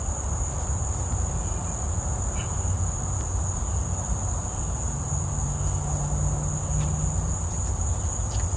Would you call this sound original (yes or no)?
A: yes